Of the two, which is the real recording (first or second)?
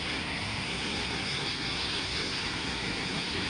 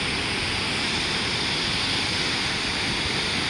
second